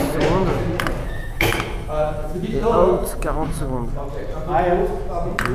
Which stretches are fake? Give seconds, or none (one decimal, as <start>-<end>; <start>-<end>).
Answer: 1.0-3.9